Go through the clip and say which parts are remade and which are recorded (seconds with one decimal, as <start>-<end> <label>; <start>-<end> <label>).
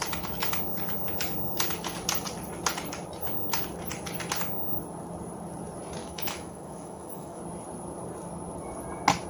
0.0-6.0 recorded; 6.0-7.4 remade; 7.4-9.3 recorded